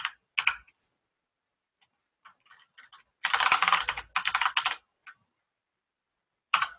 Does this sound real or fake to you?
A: real